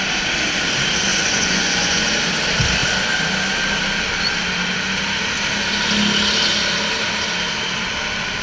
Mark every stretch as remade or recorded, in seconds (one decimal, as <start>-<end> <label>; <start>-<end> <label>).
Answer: 0.0-1.1 recorded; 1.1-2.1 remade; 2.1-8.4 recorded